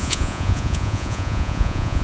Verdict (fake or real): fake